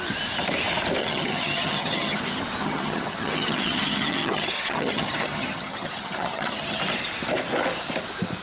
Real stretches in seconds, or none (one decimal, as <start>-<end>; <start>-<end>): 0.0-1.0; 2.2-2.6; 6.8-8.4